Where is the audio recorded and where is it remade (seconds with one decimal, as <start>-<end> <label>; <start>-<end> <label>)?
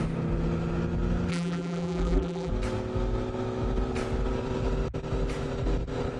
0.0-1.3 recorded; 1.3-2.5 remade; 2.5-6.2 recorded